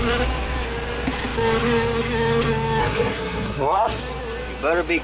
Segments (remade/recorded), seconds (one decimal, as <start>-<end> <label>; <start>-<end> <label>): 0.0-2.8 recorded; 2.8-4.0 remade; 4.0-5.0 recorded